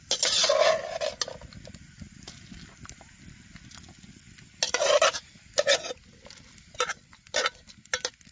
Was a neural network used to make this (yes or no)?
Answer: no